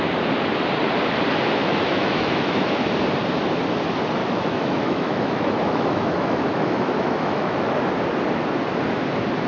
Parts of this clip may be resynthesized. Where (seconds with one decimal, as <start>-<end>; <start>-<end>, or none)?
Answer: 1.6-2.9; 4.2-7.9